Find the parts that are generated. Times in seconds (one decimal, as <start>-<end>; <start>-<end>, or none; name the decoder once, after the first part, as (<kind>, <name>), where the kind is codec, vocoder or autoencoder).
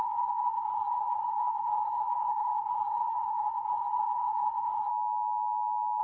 0.0-4.9 (codec, HILCodec)